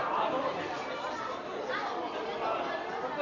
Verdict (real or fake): real